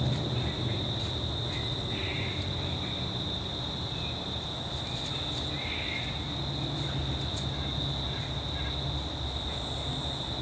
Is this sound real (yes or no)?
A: yes